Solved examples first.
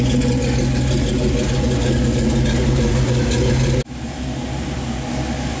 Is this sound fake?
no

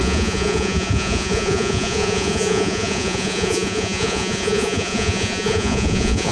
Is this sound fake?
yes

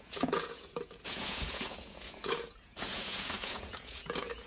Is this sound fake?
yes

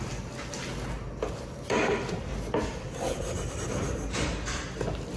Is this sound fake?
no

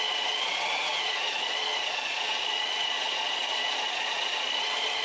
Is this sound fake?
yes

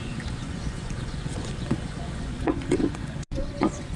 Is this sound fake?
yes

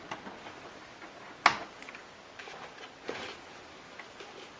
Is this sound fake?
no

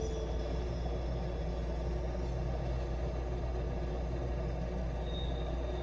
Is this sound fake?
no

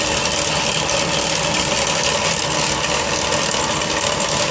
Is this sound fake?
no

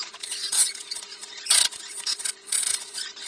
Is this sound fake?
yes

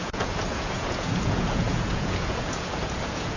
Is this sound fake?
yes